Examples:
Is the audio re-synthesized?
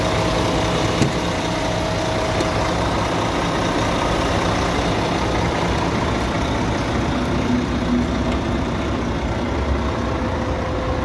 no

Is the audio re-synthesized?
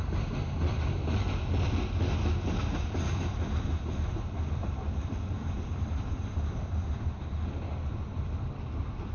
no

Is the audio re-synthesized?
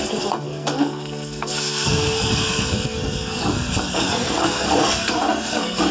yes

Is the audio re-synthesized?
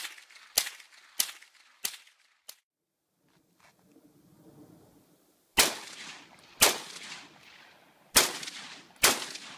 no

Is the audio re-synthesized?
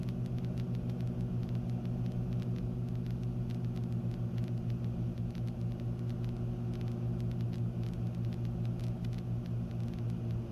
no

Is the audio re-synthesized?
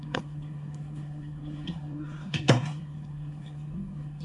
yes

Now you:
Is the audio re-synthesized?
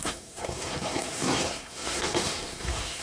yes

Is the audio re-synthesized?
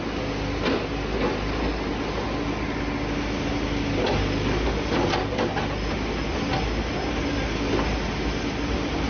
no